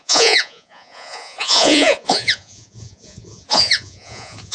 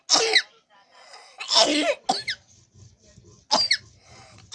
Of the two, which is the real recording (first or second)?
second